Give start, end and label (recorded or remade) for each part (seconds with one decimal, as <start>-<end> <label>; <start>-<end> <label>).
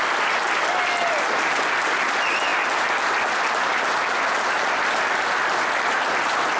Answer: 0.0-6.6 recorded